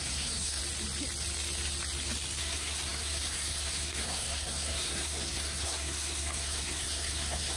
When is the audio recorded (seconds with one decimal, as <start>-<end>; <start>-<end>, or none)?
0.6-2.4